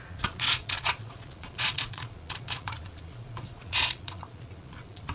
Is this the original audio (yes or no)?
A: no